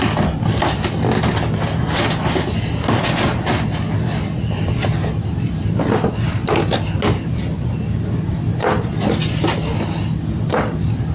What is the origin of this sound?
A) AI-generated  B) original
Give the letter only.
B